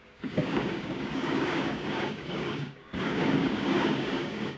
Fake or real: fake